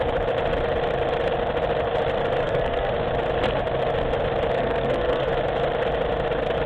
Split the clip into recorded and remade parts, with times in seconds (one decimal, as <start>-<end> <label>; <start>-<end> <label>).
0.0-2.4 recorded; 2.4-2.9 remade; 2.9-4.6 recorded; 4.6-5.3 remade; 5.3-6.7 recorded